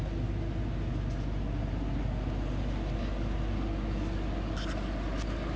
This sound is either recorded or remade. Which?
recorded